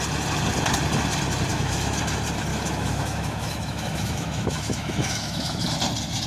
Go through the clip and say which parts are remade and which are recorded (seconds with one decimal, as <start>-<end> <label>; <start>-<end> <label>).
0.0-1.5 recorded; 1.5-2.0 remade; 2.0-2.5 recorded; 2.5-5.6 remade; 5.6-6.3 recorded